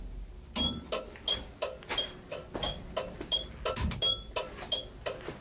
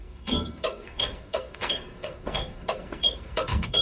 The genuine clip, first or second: first